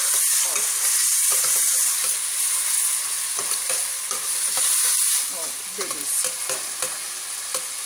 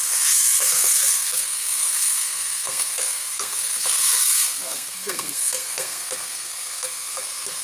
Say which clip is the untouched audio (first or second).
first